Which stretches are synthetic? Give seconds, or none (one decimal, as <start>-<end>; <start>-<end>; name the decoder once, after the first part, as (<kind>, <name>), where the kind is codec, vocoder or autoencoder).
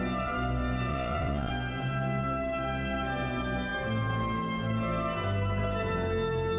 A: 0.9-1.5 (vocoder, Vocos)